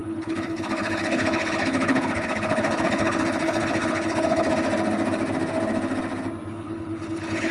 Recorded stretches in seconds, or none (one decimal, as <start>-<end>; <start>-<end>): 4.5-6.5